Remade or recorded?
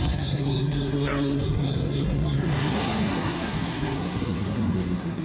remade